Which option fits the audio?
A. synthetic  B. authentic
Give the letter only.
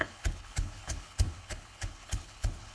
A